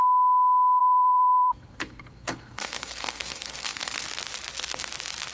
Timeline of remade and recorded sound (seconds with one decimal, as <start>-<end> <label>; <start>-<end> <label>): 0.0-0.8 recorded; 0.8-4.0 remade; 4.0-5.3 recorded